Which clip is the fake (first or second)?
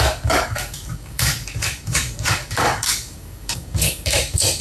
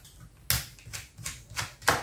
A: first